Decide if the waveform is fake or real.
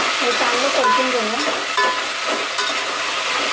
real